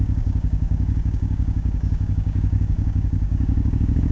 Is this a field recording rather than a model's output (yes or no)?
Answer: no